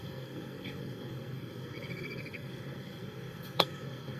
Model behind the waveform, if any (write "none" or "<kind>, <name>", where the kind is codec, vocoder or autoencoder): codec, SNAC